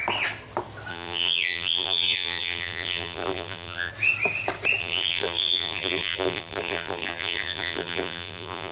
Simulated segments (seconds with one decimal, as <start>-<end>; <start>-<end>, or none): 0.9-3.9; 4.8-8.7